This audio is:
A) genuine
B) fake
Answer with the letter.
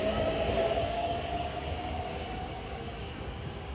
B